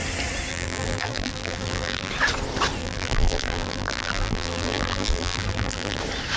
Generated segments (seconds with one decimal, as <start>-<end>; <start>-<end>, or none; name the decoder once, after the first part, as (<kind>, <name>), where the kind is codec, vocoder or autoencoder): 0.5-2.1 (vocoder, BigVGAN v2); 2.8-6.0